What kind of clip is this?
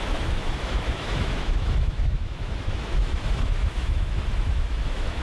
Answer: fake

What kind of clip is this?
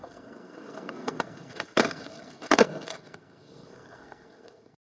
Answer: fake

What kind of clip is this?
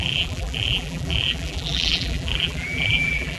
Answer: fake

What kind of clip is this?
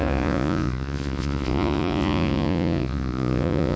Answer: fake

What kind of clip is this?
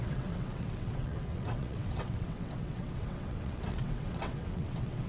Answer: fake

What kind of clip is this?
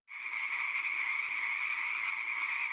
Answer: real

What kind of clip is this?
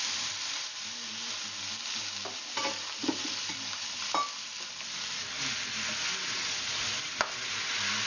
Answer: real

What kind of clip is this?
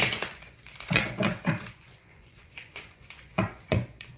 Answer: fake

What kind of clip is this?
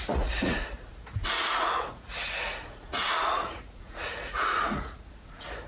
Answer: fake